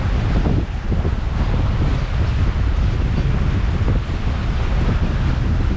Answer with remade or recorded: recorded